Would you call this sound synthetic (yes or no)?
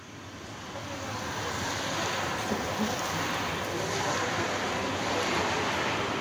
no